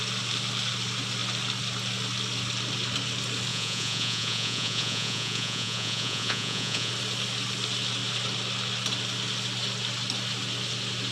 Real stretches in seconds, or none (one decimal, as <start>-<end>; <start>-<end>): 0.0-3.5; 6.9-11.1